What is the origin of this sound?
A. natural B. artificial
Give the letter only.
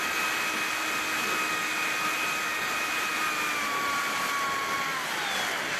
A